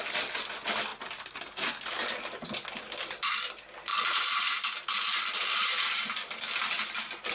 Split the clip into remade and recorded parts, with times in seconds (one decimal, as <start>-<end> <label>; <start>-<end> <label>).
0.0-7.3 recorded